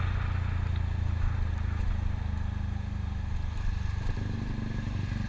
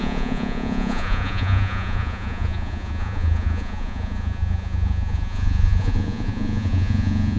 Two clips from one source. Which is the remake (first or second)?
second